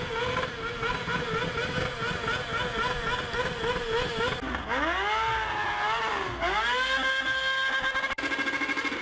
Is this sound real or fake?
real